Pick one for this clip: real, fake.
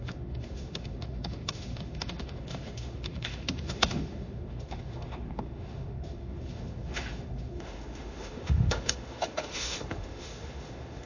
fake